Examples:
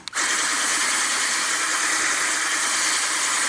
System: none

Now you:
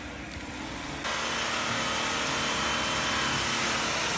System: none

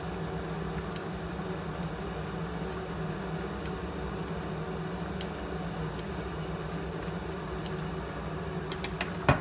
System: none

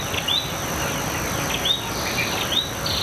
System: none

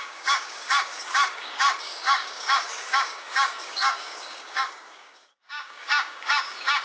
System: codec, DAC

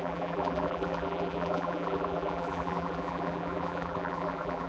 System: vocoder, BigVGAN v2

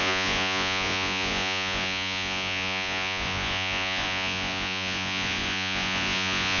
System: vocoder, Vocos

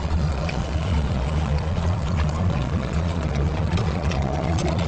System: vocoder, Vocos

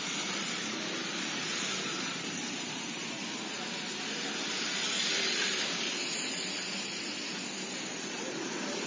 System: none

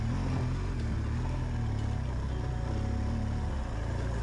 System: none